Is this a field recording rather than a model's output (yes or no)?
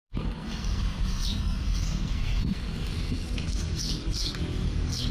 no